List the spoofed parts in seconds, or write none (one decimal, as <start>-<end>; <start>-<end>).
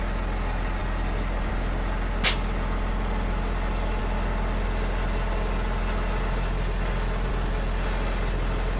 none